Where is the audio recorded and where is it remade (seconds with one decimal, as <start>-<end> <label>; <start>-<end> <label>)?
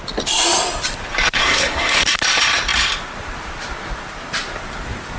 0.0-1.4 recorded; 1.4-2.0 remade; 2.0-5.2 recorded